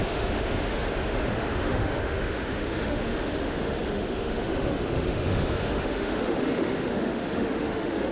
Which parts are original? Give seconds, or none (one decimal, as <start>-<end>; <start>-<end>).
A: none